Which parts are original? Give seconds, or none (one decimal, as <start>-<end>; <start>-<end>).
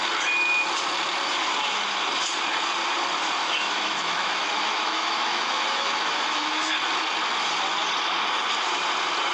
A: 0.0-3.4; 6.7-9.3